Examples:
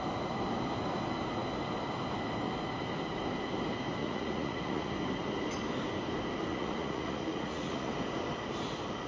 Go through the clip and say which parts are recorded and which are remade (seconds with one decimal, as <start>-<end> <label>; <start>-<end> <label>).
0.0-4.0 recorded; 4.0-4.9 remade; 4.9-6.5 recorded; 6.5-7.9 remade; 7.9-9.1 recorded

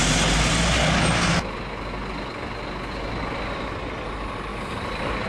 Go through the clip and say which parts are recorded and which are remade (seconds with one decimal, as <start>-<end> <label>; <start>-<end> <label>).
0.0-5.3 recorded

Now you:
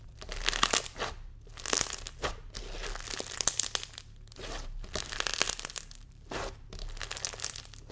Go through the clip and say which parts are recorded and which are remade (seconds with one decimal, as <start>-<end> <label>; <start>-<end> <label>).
0.0-7.9 recorded

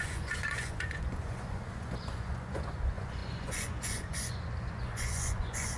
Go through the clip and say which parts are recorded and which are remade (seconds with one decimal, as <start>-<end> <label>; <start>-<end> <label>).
0.0-5.8 remade

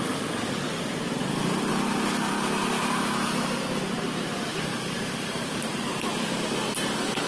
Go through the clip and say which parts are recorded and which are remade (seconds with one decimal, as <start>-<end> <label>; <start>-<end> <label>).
0.0-1.7 recorded; 1.7-6.1 remade; 6.1-7.3 recorded